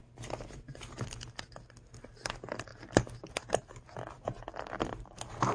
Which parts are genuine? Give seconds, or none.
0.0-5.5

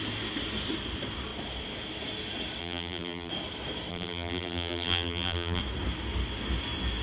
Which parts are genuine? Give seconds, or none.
0.0-2.6; 3.3-3.9; 5.6-7.0

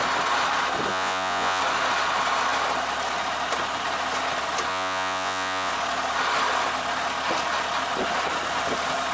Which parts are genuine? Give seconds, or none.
0.0-0.9; 1.6-4.7; 5.7-9.1

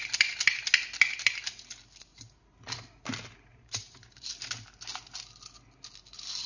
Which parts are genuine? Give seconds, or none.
0.0-2.1; 2.8-3.5; 4.3-6.5

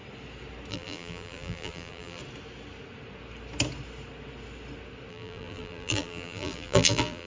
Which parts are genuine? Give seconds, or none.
0.0-0.7; 2.2-5.1